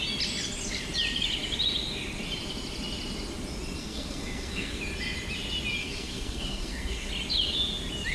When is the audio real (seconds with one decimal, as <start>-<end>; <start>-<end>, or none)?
0.0-3.8; 4.8-5.8; 7.1-8.1